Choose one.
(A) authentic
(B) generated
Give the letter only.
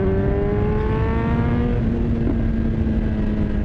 A